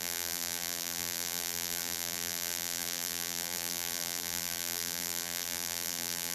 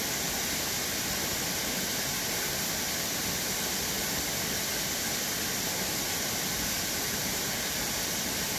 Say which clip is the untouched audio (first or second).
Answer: second